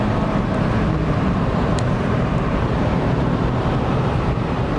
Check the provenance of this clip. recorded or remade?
remade